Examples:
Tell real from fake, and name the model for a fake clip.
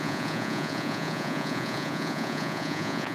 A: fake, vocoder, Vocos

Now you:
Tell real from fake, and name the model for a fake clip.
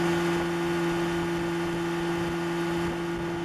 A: real